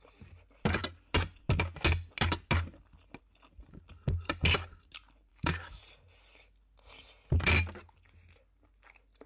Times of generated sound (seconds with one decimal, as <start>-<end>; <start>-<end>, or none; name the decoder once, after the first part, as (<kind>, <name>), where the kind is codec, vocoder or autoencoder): 5.3-5.8 (autoencoder, DAC-VAE)